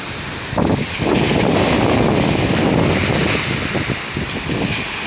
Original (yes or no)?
yes